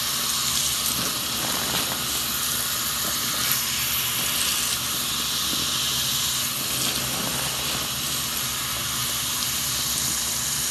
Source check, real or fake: real